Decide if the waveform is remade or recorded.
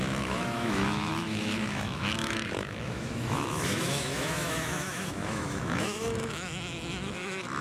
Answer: remade